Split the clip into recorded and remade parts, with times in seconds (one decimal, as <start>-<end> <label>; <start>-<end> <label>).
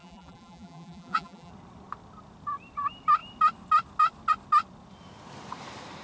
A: 0.0-1.5 remade; 1.5-6.0 recorded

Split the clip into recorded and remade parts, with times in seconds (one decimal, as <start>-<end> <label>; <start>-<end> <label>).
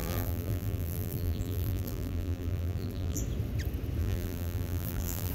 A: 0.0-3.2 remade; 3.2-4.0 recorded; 4.0-5.3 remade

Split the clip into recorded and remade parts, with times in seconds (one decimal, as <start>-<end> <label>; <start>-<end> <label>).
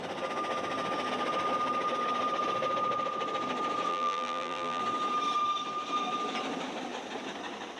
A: 0.0-3.9 recorded; 3.9-4.8 remade; 4.8-7.8 recorded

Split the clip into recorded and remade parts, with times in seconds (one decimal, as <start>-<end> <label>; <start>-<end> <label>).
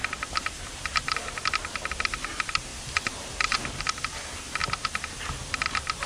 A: 0.0-1.2 remade; 1.2-2.7 recorded; 2.7-3.8 remade; 3.8-6.1 recorded